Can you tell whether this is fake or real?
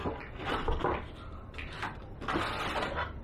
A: real